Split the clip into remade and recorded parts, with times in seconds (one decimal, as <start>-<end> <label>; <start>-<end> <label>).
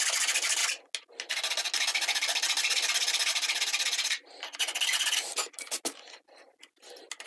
0.0-7.3 recorded